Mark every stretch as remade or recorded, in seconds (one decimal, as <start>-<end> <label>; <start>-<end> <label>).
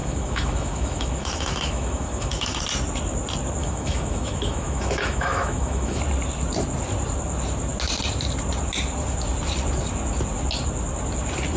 0.0-2.6 remade; 2.6-3.6 recorded; 3.6-6.0 remade; 6.0-11.6 recorded